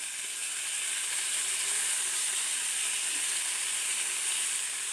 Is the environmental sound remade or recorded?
recorded